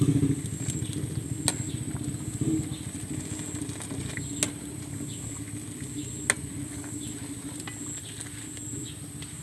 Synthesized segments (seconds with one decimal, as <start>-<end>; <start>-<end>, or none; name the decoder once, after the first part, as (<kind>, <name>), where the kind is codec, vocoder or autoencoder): none